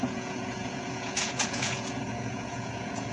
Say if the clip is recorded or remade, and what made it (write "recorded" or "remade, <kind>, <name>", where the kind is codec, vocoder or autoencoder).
remade, vocoder, Vocos